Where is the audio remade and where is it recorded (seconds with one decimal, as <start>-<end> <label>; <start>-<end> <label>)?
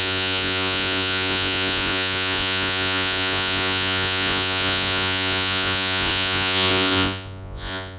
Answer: 0.0-8.0 remade